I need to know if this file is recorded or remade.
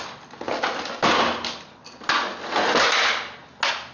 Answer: recorded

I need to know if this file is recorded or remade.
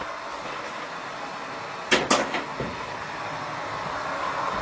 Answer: recorded